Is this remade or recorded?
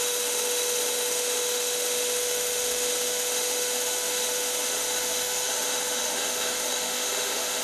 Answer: remade